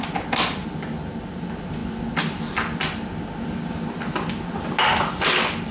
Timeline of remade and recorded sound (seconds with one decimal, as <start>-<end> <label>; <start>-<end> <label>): 0.0-5.7 recorded